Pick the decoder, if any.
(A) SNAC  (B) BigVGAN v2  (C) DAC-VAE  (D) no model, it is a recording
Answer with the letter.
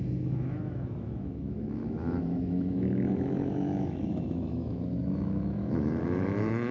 C